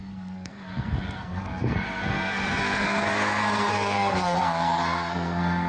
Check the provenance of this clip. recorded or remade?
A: remade